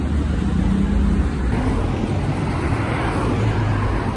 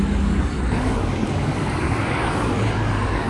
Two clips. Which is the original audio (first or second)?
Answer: first